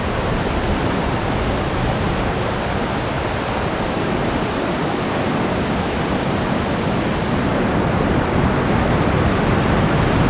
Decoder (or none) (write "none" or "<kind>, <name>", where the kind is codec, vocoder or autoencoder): none